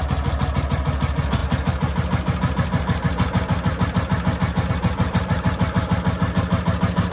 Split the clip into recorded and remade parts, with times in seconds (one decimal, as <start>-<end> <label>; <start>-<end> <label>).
0.0-7.1 recorded